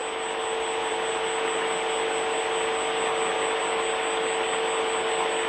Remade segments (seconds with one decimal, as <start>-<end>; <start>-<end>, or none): none